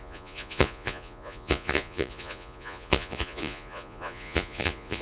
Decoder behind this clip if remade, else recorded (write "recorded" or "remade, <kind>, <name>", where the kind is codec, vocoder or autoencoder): remade, vocoder, Vocos